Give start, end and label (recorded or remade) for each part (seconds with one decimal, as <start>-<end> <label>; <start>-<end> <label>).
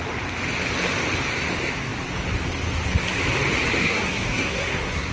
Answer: 0.0-3.8 recorded; 3.8-5.1 remade